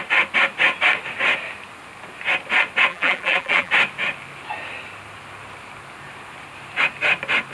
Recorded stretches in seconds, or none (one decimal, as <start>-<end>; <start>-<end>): 0.0-2.9; 3.7-7.5